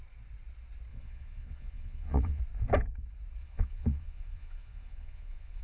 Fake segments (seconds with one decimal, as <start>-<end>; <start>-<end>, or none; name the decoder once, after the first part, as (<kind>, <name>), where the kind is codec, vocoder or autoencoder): 0.9-2.4 (vocoder, Vocos); 3.4-5.6